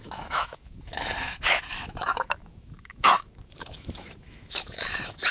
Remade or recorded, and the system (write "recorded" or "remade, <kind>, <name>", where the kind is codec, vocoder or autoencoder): remade, autoencoder, DAC-VAE